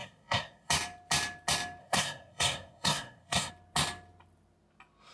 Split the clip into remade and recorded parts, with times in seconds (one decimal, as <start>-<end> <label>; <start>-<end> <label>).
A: 0.0-0.7 remade; 0.7-1.8 recorded; 1.8-3.5 remade; 3.5-5.1 recorded